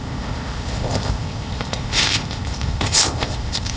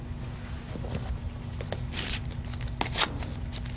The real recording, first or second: second